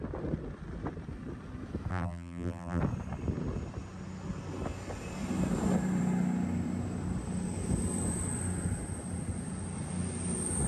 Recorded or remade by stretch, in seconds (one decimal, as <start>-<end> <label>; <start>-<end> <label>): 0.0-1.9 recorded; 1.9-2.8 remade; 2.8-10.7 recorded